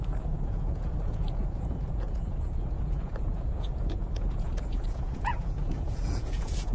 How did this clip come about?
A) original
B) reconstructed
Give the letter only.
B